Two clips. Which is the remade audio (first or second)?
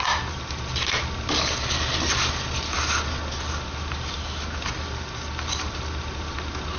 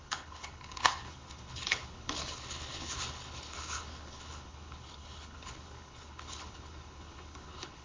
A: second